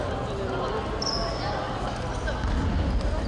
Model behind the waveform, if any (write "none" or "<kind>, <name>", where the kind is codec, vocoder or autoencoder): none